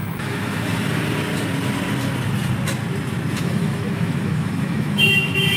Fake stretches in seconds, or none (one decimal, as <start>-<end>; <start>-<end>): 0.0-0.7; 3.4-5.6